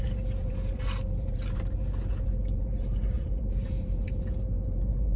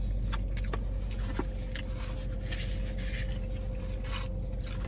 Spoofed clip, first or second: first